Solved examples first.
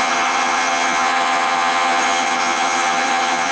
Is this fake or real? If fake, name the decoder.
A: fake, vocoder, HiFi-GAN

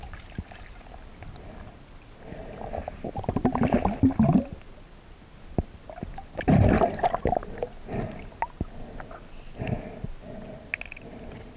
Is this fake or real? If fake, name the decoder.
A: real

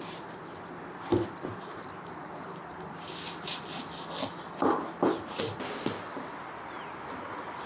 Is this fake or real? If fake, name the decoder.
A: real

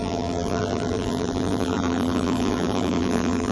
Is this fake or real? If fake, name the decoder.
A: fake, vocoder, BigVGAN v2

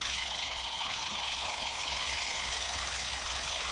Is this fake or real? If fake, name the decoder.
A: fake, codec, HILCodec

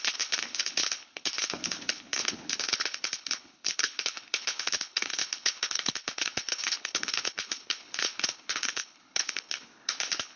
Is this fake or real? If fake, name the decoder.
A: fake, codec, HILCodec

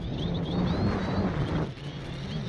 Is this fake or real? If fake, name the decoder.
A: real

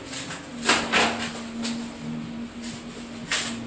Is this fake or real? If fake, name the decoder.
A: real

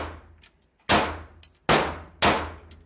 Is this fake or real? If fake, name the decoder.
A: real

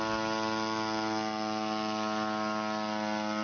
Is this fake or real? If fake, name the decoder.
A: real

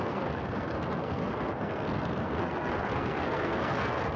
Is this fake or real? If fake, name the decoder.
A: fake, codec, SNAC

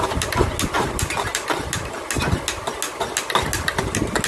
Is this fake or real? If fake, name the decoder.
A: real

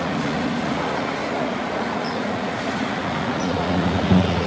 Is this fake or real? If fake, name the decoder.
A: fake, vocoder, Vocos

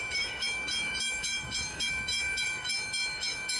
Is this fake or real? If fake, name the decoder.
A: fake, autoencoder, DAC-VAE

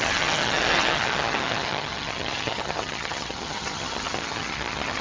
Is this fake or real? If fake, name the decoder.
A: fake, vocoder, HiFi-GAN